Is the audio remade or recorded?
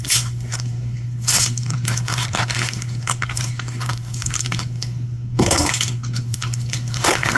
remade